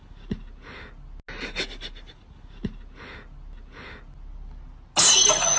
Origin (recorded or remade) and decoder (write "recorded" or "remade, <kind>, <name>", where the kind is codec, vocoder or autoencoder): recorded